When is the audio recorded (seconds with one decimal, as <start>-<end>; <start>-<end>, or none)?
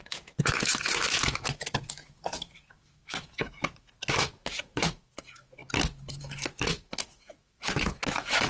5.6-6.2